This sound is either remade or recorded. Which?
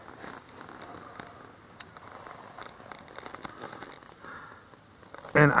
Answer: recorded